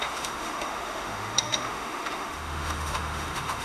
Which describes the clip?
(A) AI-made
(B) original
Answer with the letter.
A